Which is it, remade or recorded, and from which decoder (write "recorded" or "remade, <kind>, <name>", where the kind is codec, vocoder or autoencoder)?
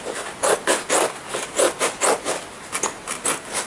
recorded